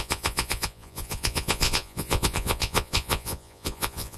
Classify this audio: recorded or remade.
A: remade